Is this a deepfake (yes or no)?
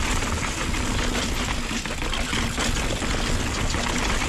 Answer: no